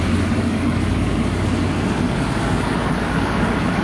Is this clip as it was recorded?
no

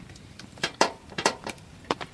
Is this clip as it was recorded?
no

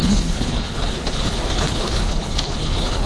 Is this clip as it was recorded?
no